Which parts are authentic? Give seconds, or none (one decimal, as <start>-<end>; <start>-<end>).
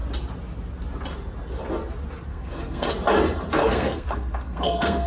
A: 0.0-2.3; 2.9-3.6